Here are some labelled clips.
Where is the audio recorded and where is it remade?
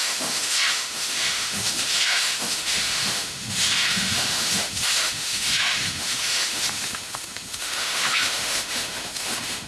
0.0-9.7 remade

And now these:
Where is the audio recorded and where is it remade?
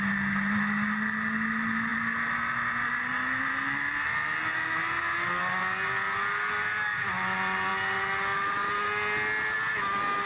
0.0-10.3 recorded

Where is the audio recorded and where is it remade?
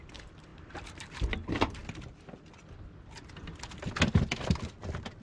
0.0-0.5 recorded; 0.5-1.1 remade; 1.1-5.2 recorded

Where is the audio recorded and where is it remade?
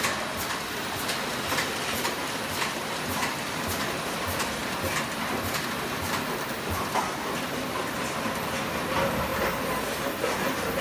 0.0-10.8 recorded